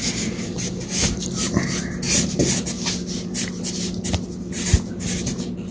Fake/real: real